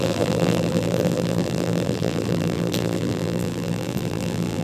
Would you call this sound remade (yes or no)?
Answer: yes